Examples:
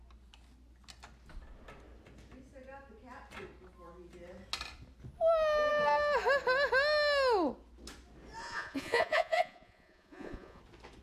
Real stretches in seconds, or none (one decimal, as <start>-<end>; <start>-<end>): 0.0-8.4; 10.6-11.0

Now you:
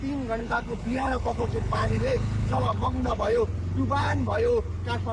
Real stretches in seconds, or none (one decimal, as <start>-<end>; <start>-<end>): 0.0-0.4; 3.4-4.0; 4.5-5.1

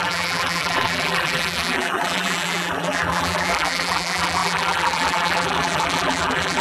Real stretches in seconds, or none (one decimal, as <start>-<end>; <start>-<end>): none